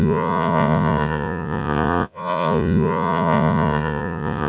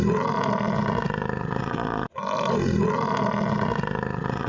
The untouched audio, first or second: second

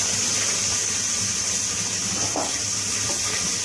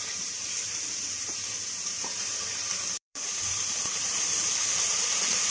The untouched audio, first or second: first